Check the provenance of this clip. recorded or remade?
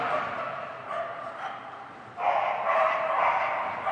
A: recorded